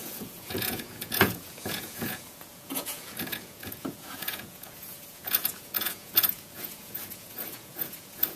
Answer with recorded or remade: remade